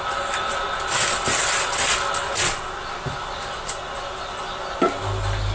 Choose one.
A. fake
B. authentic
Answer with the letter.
B